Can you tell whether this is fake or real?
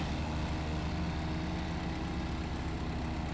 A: real